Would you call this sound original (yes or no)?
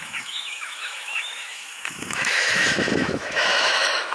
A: no